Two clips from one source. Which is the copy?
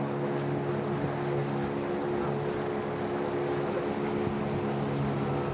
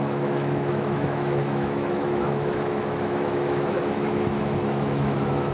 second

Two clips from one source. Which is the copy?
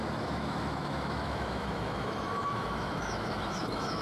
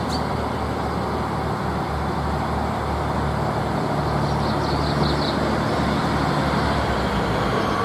first